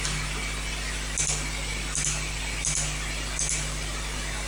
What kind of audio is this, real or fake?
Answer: real